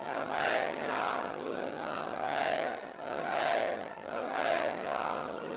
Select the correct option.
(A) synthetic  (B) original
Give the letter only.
A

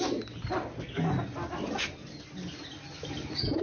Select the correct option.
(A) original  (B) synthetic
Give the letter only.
A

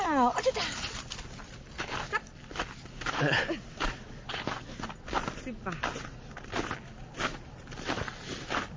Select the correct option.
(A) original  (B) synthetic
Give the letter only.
A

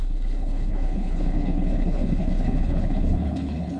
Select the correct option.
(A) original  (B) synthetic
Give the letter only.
B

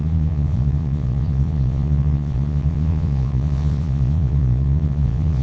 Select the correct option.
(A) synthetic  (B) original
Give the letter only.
A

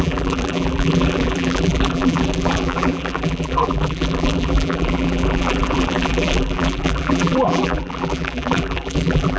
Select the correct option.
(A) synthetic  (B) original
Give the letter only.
A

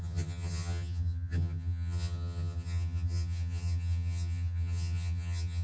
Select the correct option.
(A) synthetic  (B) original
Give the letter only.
A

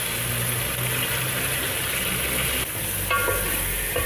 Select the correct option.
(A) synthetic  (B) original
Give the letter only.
B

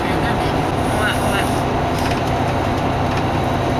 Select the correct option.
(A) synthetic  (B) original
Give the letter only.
B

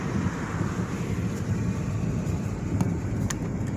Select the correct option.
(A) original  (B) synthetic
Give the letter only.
A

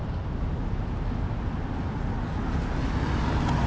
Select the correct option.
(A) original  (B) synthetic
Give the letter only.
A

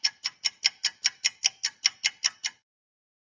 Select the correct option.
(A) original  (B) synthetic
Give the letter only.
A